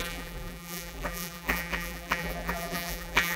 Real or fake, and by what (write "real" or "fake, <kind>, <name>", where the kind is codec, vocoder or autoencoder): fake, vocoder, BigVGAN v2